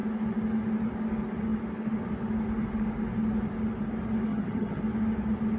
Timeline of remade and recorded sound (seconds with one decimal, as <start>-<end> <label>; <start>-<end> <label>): 0.0-4.3 recorded; 4.3-4.8 remade; 4.8-5.6 recorded